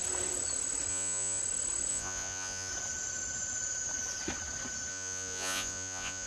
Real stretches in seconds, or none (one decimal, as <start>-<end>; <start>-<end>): 0.0-0.9; 1.4-1.9; 2.7-4.9